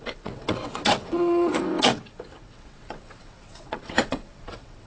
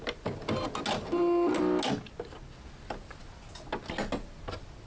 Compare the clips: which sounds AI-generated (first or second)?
first